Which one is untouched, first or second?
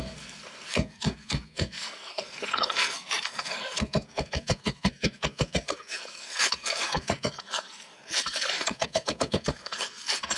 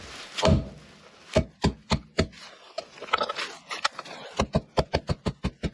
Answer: second